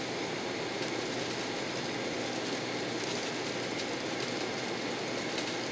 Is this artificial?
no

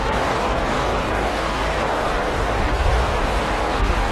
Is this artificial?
yes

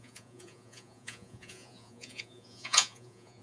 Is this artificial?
yes